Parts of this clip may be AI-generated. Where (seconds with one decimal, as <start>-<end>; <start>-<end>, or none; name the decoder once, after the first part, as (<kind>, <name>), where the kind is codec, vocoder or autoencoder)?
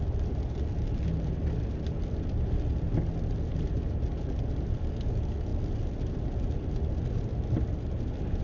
none